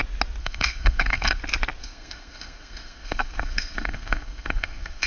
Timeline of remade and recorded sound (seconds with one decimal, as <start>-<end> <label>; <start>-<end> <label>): 0.0-0.4 recorded; 0.4-1.4 remade; 1.4-1.8 recorded; 1.8-5.1 remade